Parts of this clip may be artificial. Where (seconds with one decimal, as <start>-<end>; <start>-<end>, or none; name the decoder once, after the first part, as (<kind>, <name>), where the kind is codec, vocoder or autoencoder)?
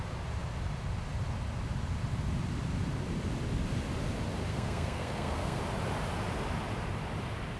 4.5-5.6 (codec, SNAC)